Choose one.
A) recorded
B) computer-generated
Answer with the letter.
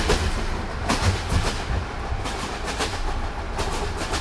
A